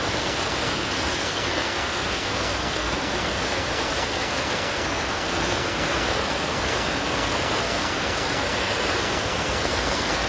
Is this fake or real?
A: fake